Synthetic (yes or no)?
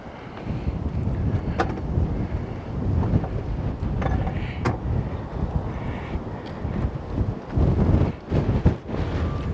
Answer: no